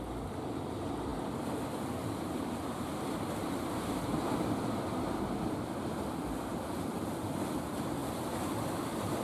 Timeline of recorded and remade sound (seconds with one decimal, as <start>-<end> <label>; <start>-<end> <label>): 0.0-9.2 recorded